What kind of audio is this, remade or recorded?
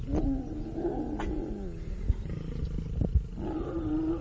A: recorded